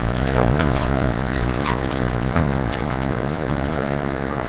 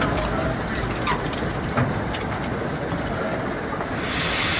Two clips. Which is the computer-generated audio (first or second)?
first